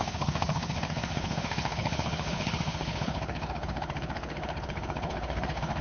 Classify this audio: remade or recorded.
remade